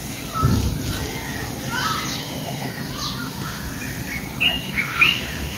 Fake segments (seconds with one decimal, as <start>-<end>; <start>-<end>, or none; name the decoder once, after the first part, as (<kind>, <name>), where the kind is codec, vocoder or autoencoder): 2.2-2.7 (autoencoder, DAC-VAE); 3.2-3.7; 4.5-5.6